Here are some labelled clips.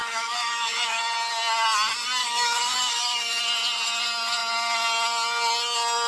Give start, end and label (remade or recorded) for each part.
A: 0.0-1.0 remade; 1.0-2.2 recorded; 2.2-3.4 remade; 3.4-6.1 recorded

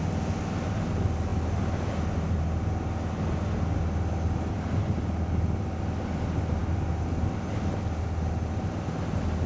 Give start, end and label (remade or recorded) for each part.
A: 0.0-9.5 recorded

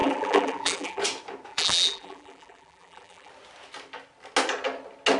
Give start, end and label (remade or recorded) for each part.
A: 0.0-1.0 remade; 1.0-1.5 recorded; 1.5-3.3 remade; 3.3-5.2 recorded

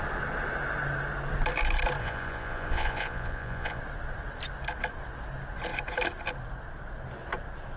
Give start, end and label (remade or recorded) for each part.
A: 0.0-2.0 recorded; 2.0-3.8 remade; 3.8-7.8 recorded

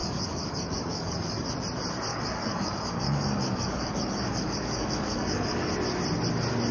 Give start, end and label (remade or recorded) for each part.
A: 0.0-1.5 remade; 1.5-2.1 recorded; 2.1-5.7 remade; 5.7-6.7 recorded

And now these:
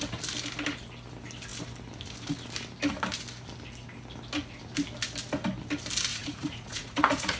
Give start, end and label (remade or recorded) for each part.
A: 0.0-6.1 recorded; 6.1-7.4 remade

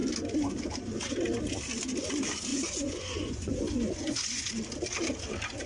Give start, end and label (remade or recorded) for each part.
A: 0.0-2.5 recorded; 2.5-4.5 remade; 4.5-5.7 recorded

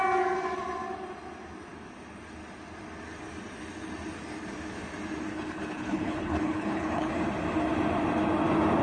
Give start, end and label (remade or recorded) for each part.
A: 0.0-5.3 recorded; 5.3-7.1 remade; 7.1-8.8 recorded